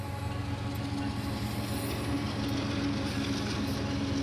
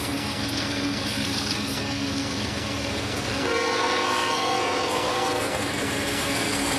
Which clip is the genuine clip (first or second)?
first